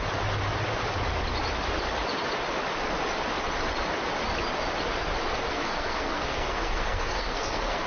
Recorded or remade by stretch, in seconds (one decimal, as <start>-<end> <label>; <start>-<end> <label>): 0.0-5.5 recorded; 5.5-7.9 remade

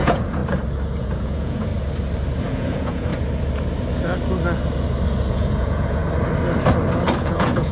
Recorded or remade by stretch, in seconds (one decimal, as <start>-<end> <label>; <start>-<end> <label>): 0.0-0.4 remade; 0.4-1.0 recorded; 1.0-1.7 remade; 1.7-2.4 recorded; 2.4-3.1 remade; 3.1-5.3 recorded; 5.3-6.0 remade; 6.0-7.2 recorded; 7.2-7.7 remade

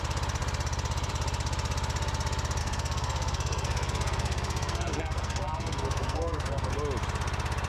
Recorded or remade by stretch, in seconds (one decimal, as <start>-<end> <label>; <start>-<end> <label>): 0.0-2.6 recorded; 2.6-6.7 remade; 6.7-7.7 recorded